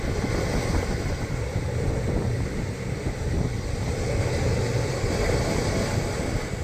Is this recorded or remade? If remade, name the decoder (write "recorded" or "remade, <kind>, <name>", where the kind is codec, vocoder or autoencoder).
recorded